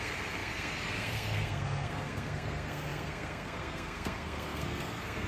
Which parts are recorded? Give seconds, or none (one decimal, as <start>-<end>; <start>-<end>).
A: none